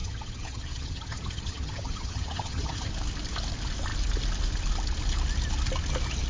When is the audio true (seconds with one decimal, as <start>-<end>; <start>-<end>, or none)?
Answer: 2.9-6.3